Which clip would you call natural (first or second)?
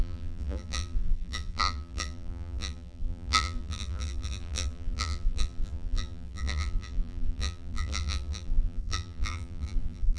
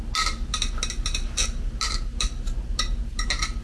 second